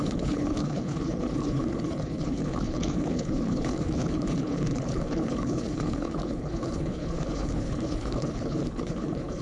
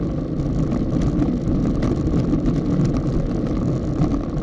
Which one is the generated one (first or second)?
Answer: first